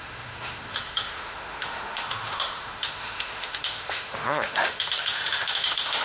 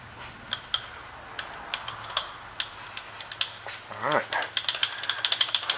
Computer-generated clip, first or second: first